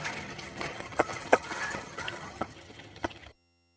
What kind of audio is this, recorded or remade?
remade